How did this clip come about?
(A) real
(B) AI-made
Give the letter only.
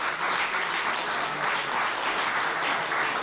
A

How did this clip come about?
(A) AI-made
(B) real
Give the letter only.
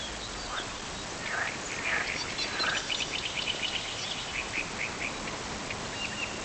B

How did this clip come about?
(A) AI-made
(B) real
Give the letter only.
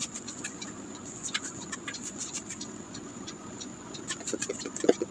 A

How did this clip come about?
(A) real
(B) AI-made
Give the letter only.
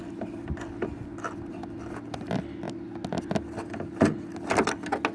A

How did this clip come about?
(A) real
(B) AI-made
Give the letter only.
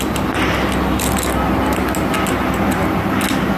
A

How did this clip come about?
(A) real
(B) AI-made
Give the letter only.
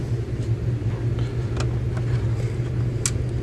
A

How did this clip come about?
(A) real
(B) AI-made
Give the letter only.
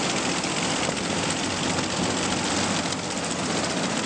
A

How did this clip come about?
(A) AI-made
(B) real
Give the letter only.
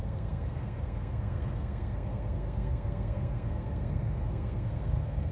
A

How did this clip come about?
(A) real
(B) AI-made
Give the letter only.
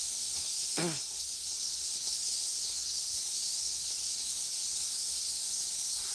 B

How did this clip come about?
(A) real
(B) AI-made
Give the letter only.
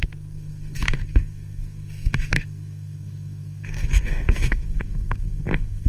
B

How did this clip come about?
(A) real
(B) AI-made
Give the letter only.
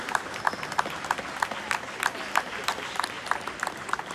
A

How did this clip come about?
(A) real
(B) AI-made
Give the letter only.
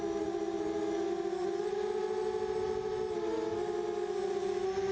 A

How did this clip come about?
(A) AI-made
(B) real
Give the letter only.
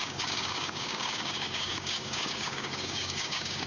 A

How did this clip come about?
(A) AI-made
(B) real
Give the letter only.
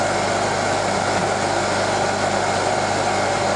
B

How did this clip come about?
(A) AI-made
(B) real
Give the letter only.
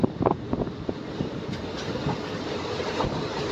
B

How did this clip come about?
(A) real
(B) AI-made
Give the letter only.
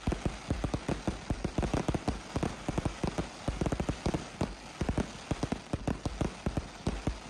A